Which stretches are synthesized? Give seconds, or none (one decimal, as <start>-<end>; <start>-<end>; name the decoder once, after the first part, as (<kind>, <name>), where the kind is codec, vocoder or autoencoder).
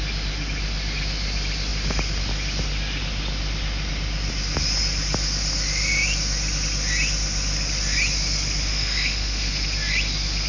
8.7-9.5 (autoencoder, DAC-VAE)